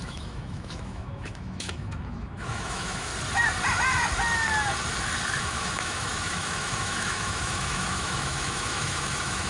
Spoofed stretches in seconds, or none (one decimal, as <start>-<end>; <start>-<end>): 0.0-3.1; 5.4-9.5